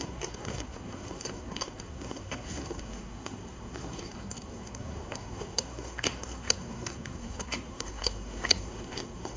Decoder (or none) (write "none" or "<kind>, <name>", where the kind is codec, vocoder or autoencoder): codec, SNAC